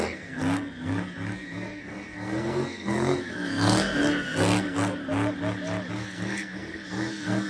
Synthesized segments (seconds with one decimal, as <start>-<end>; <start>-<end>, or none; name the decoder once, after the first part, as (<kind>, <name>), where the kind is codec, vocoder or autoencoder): 0.0-5.0 (codec, SNAC); 5.9-7.5